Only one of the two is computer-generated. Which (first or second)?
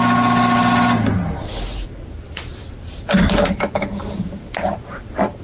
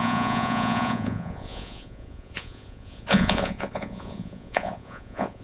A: second